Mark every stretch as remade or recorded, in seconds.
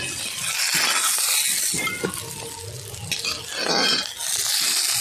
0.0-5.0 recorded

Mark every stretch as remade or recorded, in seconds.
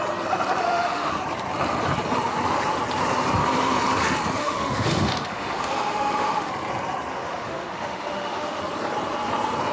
0.0-0.6 recorded; 0.6-1.1 remade; 1.1-4.4 recorded; 4.4-6.5 remade; 6.5-7.1 recorded; 7.1-8.6 remade; 8.6-9.7 recorded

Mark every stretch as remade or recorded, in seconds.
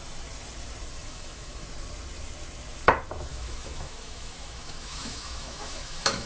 0.0-1.0 recorded; 1.0-1.7 remade; 1.7-3.3 recorded; 3.3-6.3 remade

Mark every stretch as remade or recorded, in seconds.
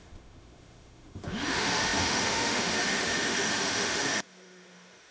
0.0-5.1 remade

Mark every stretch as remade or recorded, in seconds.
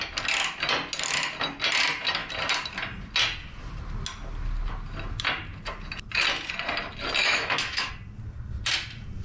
0.0-7.2 recorded; 7.2-7.9 remade; 7.9-9.2 recorded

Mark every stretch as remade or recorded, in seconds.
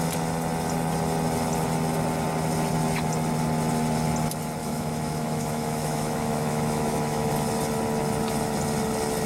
0.0-4.6 recorded; 4.6-7.3 remade; 7.3-9.3 recorded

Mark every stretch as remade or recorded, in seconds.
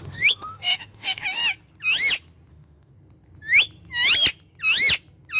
0.0-1.4 remade; 1.4-2.5 recorded; 2.5-2.9 remade; 2.9-5.4 recorded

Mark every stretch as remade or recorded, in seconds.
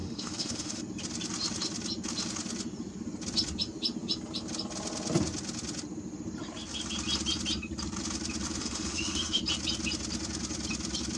0.0-0.8 remade; 0.8-8.6 recorded; 8.6-9.4 remade; 9.4-11.2 recorded